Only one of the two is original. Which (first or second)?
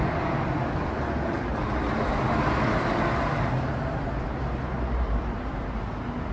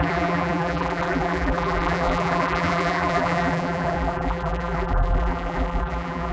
first